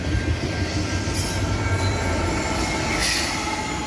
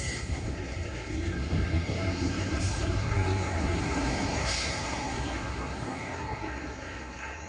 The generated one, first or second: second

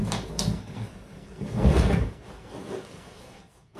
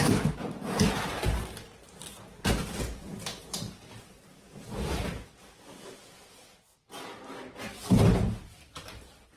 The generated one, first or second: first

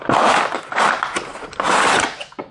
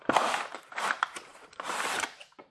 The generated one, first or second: second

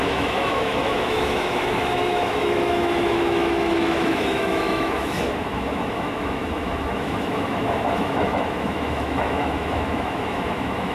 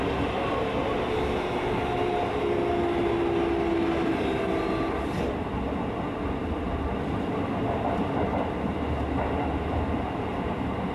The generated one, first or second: first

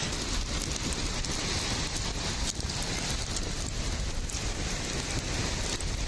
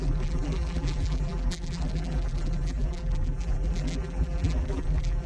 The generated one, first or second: second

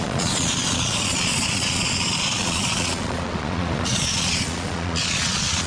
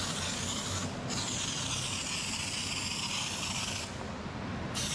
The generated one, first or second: first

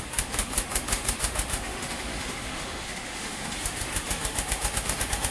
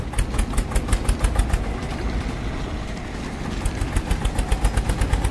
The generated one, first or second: first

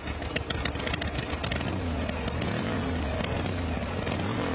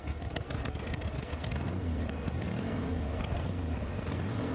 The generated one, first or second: second